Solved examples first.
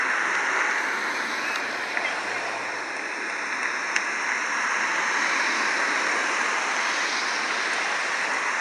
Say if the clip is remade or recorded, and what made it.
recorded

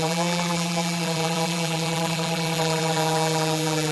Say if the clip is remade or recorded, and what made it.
remade, vocoder, BigVGAN v2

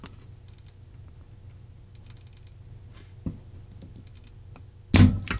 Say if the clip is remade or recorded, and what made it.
recorded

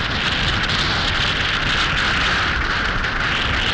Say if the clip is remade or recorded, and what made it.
recorded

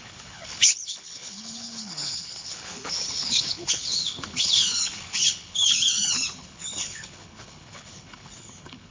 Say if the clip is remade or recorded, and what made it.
remade, codec, HILCodec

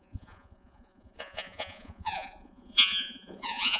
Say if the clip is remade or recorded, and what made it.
remade, vocoder, Vocos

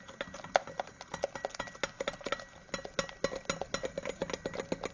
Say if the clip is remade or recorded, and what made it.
recorded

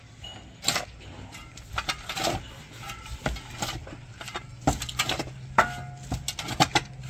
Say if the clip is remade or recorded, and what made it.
recorded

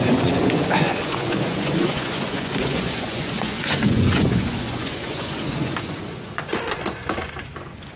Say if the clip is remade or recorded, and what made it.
remade, vocoder, Vocos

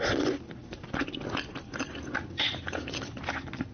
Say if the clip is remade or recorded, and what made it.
recorded